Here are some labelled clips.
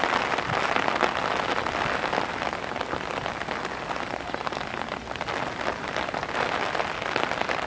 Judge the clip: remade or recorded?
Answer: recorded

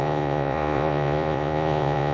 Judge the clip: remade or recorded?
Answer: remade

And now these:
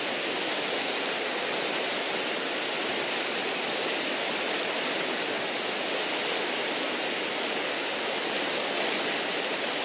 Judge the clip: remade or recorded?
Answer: recorded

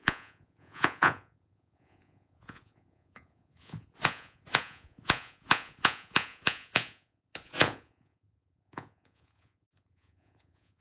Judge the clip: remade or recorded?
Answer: remade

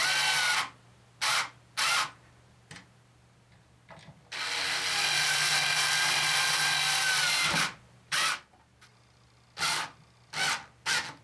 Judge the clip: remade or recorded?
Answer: recorded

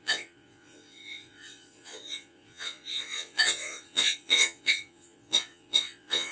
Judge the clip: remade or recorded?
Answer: remade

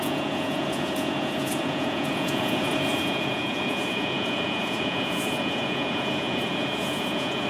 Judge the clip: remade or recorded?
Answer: remade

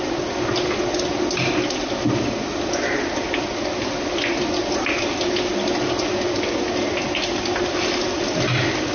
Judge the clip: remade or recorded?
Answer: recorded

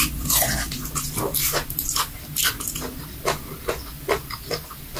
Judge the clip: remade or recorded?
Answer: recorded